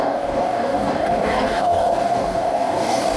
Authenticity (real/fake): fake